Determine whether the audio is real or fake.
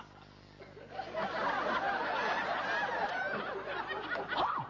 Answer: real